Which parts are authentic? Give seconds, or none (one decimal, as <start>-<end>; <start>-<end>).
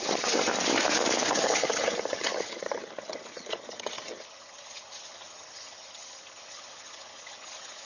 0.5-1.3